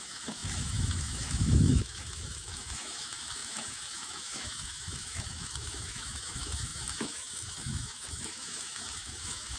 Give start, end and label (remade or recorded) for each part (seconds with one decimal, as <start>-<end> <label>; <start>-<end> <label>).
0.0-9.6 remade

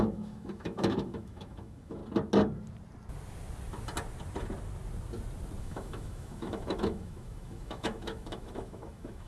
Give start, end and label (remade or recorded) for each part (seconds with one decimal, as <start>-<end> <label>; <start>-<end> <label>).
0.0-2.0 remade; 2.0-5.6 recorded; 5.6-9.3 remade